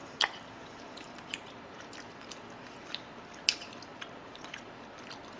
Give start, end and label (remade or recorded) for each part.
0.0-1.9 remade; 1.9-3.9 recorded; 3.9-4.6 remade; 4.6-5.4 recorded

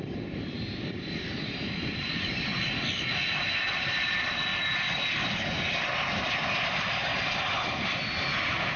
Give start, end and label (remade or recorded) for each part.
0.0-2.5 remade; 2.5-3.1 recorded; 3.1-4.5 remade; 4.5-6.1 recorded; 6.1-7.0 remade; 7.0-7.8 recorded; 7.8-8.8 remade

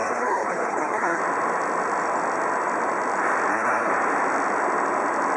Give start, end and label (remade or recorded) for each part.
0.0-1.2 remade; 1.2-3.5 recorded; 3.5-3.9 remade; 3.9-5.4 recorded

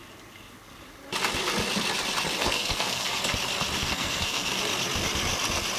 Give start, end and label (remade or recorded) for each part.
0.0-2.4 recorded; 2.4-3.2 remade; 3.2-3.8 recorded; 3.8-4.6 remade; 4.6-5.8 recorded